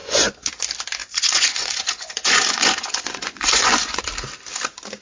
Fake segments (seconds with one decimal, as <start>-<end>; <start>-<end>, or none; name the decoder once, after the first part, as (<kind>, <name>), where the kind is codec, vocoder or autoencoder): 0.0-0.5 (vocoder, Vocos); 1.0-4.0